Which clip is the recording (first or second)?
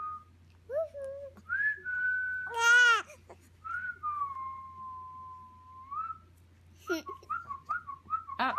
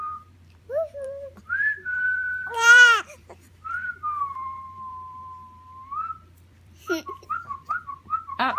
first